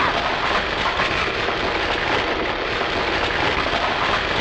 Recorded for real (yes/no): yes